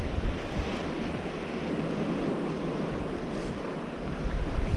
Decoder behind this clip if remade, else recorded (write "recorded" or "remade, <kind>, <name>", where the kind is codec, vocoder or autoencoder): recorded